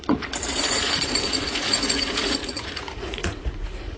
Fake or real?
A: fake